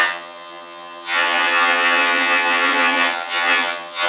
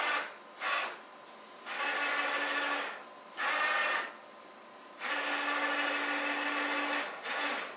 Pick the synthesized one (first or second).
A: first